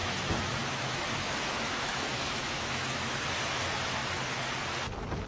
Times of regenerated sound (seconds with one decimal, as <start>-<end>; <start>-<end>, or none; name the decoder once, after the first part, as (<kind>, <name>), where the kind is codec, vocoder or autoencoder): 0.0-3.2 (autoencoder, DAC-VAE)